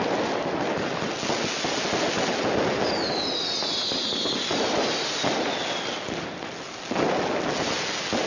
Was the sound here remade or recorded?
recorded